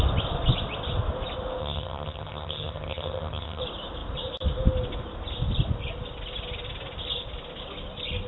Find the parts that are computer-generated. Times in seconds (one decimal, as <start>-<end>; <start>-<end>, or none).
1.6-3.6